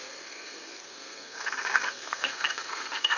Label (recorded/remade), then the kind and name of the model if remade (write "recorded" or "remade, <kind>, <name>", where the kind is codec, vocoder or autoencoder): remade, codec, SNAC